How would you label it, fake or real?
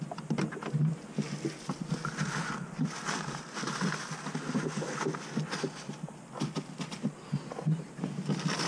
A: real